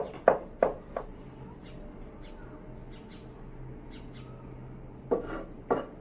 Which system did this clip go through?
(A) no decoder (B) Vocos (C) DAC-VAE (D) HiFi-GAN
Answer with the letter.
A